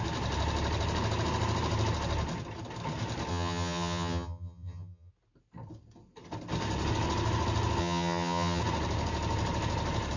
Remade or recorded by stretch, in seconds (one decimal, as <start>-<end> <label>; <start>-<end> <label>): 0.0-3.3 recorded; 3.3-5.1 remade; 5.1-7.8 recorded; 7.8-8.6 remade; 8.6-10.2 recorded